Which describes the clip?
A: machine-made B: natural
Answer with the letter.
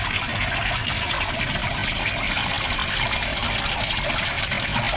A